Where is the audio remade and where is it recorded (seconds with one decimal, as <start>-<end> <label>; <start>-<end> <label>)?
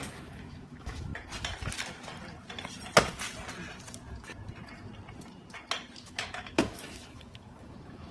0.0-1.1 remade; 1.1-6.0 recorded; 6.0-8.1 remade